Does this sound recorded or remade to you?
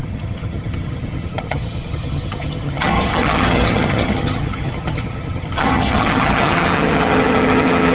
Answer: remade